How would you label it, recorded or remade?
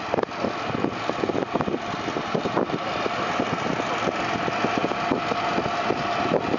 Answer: recorded